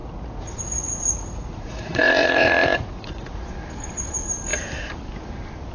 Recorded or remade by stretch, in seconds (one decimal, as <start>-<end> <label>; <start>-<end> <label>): 0.0-3.4 remade; 3.4-5.7 recorded